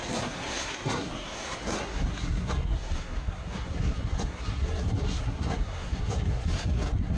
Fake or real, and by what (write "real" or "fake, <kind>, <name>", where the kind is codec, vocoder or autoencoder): fake, codec, SNAC